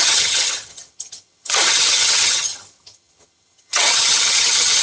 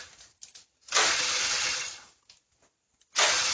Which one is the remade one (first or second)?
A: first